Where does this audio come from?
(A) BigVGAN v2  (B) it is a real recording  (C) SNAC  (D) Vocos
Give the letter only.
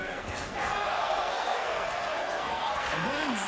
C